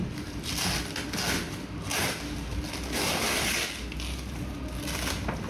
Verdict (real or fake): real